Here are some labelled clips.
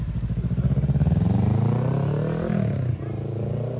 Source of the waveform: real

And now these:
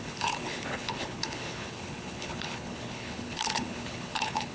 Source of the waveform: fake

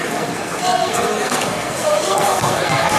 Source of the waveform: fake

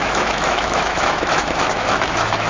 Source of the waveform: fake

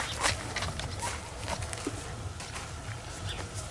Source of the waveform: real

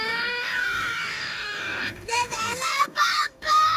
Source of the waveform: fake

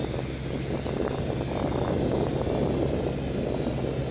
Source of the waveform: real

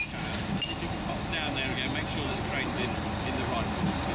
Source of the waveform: real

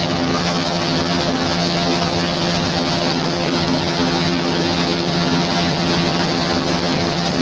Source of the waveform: fake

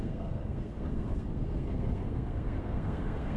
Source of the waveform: fake